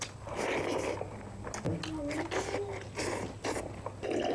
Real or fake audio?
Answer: real